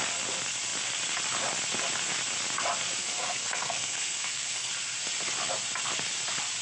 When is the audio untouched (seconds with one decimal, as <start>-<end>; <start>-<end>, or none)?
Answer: 0.0-3.0; 4.7-6.6